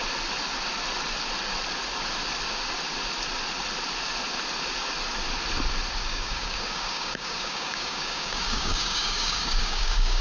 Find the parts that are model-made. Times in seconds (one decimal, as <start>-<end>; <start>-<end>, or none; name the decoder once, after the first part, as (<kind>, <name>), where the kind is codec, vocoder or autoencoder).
6.1-10.2 (codec, DAC)